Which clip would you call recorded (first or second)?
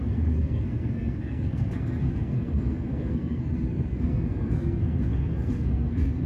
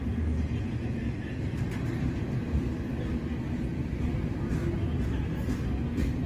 second